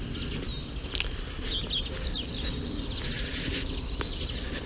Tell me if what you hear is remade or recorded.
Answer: recorded